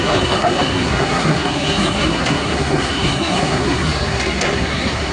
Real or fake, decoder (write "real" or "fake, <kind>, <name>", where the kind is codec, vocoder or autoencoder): fake, codec, SNAC